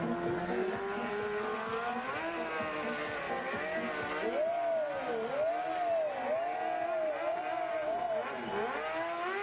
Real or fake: real